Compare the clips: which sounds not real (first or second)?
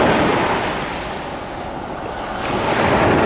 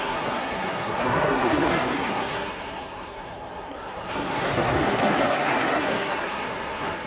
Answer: second